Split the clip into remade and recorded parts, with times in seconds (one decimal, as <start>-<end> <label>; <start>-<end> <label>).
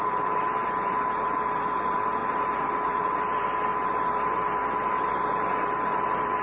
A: 0.0-6.4 remade